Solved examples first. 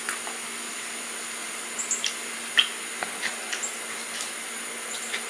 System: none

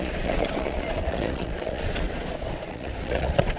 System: vocoder, Vocos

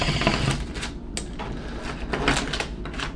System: none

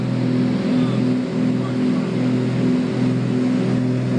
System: none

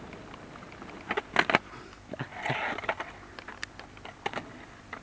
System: none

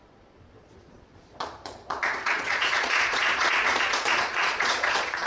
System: vocoder, Vocos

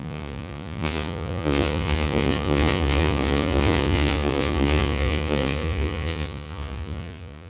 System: vocoder, Vocos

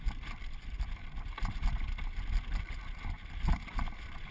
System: none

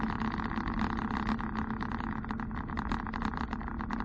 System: none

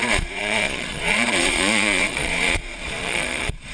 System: vocoder, Vocos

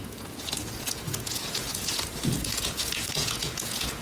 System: vocoder, Vocos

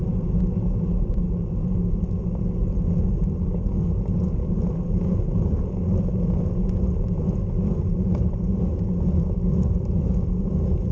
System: none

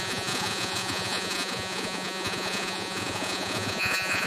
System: vocoder, Vocos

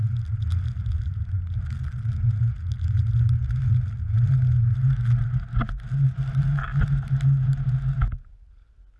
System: none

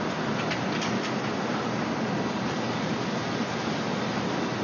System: none